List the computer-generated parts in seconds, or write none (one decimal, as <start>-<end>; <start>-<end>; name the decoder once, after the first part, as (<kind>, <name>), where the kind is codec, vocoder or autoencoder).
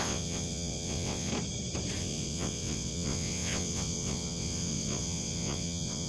0.0-1.3 (vocoder, WaveNeXt); 2.0-6.1